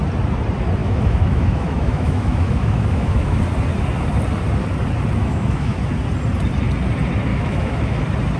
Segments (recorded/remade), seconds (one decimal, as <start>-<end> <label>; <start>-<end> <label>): 0.0-0.8 recorded; 0.8-3.4 remade; 3.4-5.2 recorded; 5.2-5.8 remade; 5.8-7.3 recorded; 7.3-8.0 remade; 8.0-8.4 recorded